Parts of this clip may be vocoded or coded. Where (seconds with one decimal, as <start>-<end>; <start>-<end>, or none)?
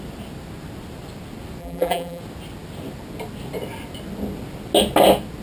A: 1.6-2.2